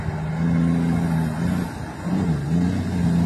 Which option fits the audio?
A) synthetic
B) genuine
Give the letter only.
B